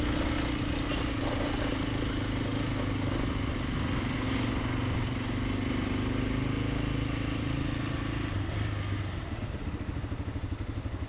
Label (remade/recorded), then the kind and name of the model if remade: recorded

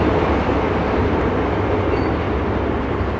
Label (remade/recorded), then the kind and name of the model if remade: recorded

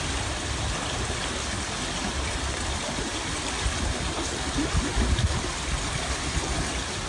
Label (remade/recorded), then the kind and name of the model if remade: recorded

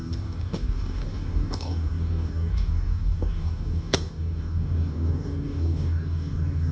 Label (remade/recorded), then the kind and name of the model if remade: remade, codec, DAC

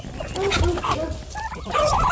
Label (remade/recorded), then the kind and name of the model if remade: recorded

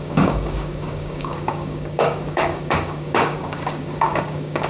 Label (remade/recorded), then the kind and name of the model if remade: remade, codec, DAC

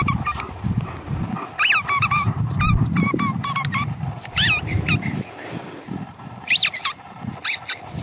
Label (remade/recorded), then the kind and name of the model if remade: recorded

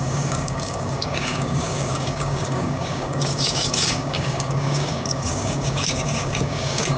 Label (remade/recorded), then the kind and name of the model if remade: remade, codec, DAC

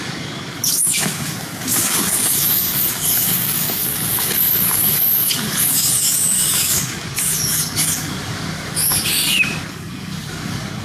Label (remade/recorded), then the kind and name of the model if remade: remade, codec, DAC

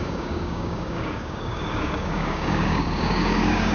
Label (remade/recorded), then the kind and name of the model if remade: remade, codec, DAC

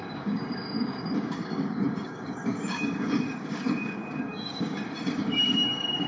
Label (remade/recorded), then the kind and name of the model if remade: remade, codec, DAC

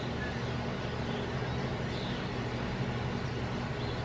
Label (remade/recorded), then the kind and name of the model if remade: recorded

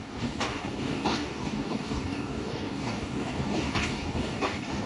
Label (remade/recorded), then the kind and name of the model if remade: remade, codec, DAC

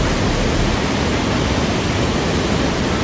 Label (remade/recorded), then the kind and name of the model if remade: recorded